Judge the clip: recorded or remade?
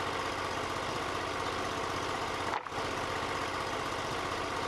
recorded